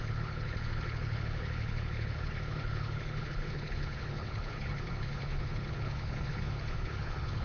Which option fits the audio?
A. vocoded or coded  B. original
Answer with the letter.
A